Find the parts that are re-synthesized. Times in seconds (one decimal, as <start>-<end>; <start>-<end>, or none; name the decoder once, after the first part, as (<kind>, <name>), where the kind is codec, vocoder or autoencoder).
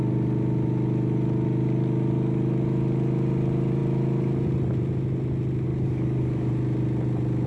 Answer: 5.7-6.5 (codec, DAC)